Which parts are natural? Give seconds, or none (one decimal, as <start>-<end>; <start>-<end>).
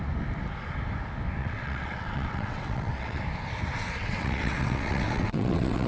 0.0-1.4; 3.2-4.0